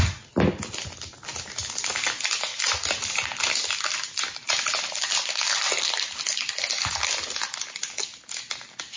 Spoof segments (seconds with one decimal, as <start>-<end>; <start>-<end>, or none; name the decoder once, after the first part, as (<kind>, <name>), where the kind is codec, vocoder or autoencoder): none